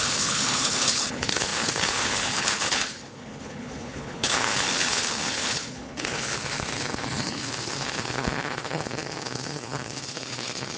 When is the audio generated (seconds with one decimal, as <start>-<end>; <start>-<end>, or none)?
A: 0.0-10.8